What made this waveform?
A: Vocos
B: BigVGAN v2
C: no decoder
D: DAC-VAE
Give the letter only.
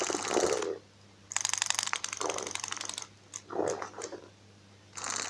C